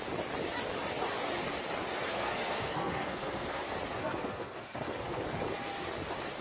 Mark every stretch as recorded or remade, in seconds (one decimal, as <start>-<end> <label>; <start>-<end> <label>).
0.0-2.1 recorded; 2.1-3.6 remade; 3.6-4.0 recorded; 4.0-5.2 remade; 5.2-6.4 recorded